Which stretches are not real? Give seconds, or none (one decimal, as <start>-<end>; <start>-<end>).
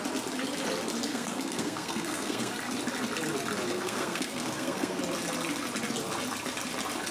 1.1-2.5; 3.7-5.0